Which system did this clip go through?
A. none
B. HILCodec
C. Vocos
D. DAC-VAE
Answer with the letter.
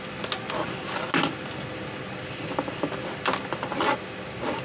A